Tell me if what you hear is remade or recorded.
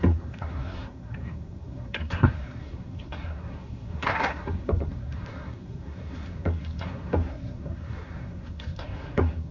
remade